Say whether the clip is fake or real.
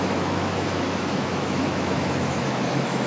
fake